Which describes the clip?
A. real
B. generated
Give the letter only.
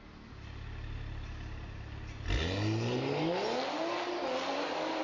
A